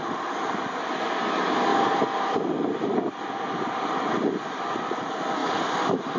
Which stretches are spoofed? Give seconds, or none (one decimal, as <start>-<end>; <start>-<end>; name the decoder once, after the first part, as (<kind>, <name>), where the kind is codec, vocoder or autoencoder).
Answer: none